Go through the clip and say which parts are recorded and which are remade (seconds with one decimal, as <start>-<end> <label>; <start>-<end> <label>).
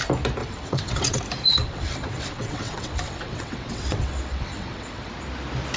0.0-0.4 recorded; 0.4-1.2 remade; 1.2-1.6 recorded; 1.6-5.1 remade; 5.1-5.8 recorded